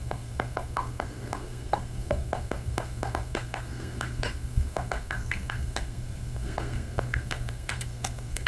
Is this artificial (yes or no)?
yes